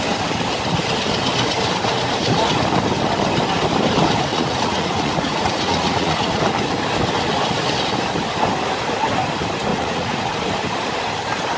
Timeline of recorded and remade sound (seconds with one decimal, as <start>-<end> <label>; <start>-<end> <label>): 0.0-4.3 recorded; 4.3-6.4 remade; 6.4-9.7 recorded; 9.7-10.2 remade; 10.2-11.6 recorded